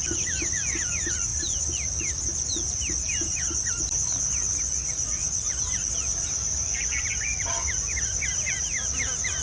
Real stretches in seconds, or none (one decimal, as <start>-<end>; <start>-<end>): 0.0-7.9; 8.5-9.4